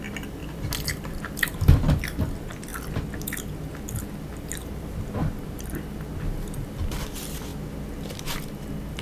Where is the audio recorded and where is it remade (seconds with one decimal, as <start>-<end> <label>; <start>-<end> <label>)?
0.0-0.4 recorded; 0.4-1.2 remade; 1.2-9.0 recorded